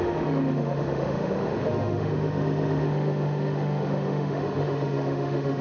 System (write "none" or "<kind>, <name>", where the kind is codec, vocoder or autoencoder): autoencoder, DAC-VAE